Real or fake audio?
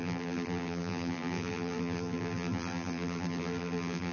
fake